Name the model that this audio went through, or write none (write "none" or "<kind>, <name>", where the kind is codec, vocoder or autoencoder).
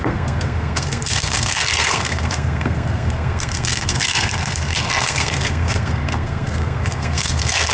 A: codec, SNAC